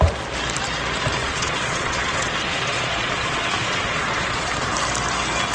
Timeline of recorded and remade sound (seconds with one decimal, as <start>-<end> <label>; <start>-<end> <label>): 0.0-1.2 recorded; 1.2-4.5 remade; 4.5-5.5 recorded